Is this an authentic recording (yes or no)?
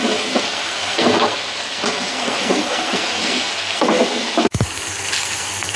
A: no